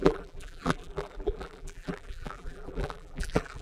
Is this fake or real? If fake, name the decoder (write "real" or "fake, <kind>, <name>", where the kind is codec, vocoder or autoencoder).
fake, vocoder, BigVGAN v2